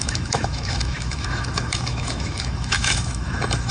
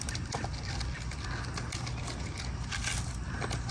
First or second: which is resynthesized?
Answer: first